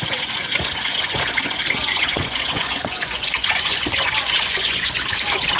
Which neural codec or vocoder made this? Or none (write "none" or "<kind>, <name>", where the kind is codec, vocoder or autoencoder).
vocoder, Vocos